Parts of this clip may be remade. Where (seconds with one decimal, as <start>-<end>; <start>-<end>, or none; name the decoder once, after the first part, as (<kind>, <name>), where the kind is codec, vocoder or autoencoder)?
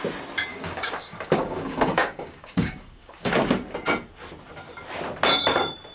0.5-3.3 (codec, DAC)